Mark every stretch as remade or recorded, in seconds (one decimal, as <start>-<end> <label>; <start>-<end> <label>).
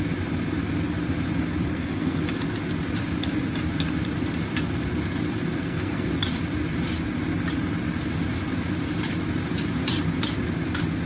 0.0-1.7 recorded; 1.7-2.2 remade; 2.2-5.6 recorded; 5.6-6.1 remade; 6.1-11.1 recorded